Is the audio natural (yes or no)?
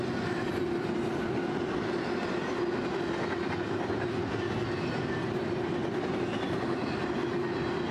yes